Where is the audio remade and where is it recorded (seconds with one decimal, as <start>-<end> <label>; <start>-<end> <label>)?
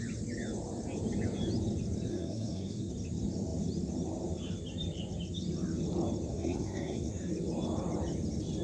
0.0-2.1 recorded; 2.1-2.9 remade; 2.9-6.3 recorded; 6.3-7.3 remade; 7.3-8.6 recorded